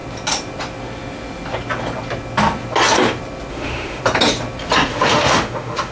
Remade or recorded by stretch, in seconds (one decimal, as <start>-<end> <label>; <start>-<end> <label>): 0.0-3.5 recorded; 3.5-4.0 remade; 4.0-4.9 recorded; 4.9-5.9 remade